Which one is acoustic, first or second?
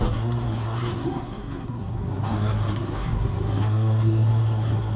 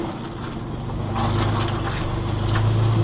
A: second